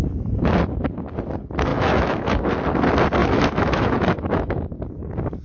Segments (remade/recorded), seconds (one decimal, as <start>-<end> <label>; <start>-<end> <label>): 0.0-1.7 recorded; 1.7-2.5 remade; 2.5-3.2 recorded; 3.2-4.7 remade; 4.7-5.4 recorded